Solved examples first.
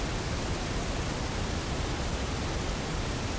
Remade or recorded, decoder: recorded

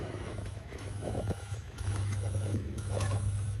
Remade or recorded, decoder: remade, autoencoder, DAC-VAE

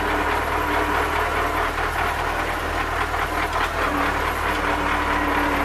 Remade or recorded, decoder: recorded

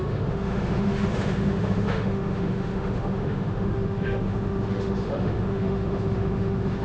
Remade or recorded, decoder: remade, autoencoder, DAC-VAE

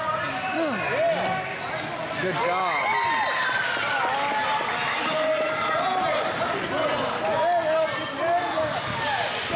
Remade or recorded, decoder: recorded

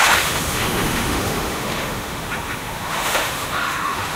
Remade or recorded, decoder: remade, autoencoder, DAC-VAE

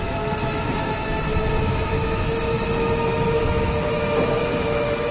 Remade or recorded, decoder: remade, autoencoder, DAC-VAE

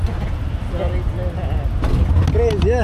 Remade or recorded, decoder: recorded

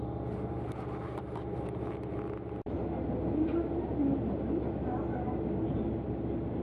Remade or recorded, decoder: recorded